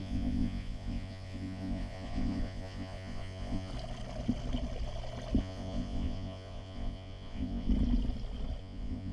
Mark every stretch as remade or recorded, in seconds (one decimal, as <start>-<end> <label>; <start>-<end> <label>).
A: 0.0-3.7 remade; 3.7-5.4 recorded; 5.4-7.7 remade; 7.7-8.6 recorded; 8.6-9.1 remade